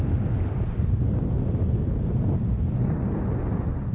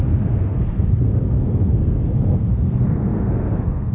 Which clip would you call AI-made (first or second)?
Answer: second